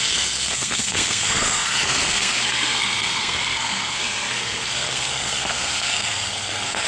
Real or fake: fake